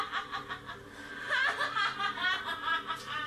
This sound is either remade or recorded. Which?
recorded